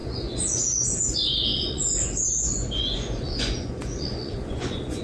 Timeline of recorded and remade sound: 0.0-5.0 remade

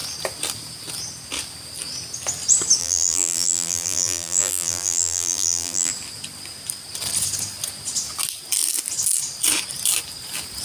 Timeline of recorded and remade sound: 0.0-2.8 recorded; 2.8-5.9 remade; 5.9-10.6 recorded

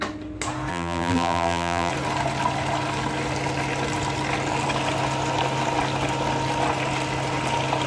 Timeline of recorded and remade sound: 0.0-0.7 recorded; 0.7-1.9 remade; 1.9-7.9 recorded

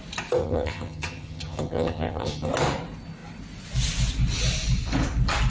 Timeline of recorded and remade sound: 0.0-0.4 recorded; 0.4-2.5 remade; 2.5-5.5 recorded

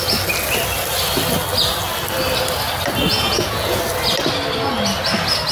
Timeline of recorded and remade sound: 0.0-3.1 recorded; 3.1-3.8 remade; 3.8-5.5 recorded

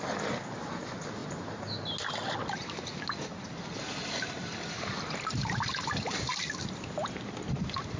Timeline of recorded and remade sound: 0.0-8.0 recorded